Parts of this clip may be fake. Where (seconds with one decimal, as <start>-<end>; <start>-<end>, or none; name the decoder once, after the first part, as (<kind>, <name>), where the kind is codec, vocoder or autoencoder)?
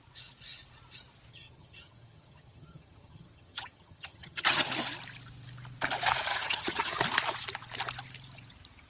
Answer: 1.3-4.7 (vocoder, HiFi-GAN); 6.3-7.0